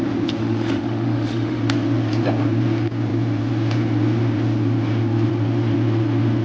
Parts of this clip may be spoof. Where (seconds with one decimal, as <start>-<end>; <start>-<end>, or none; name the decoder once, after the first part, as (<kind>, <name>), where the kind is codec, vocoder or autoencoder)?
0.4-1.6 (autoencoder, DAC-VAE)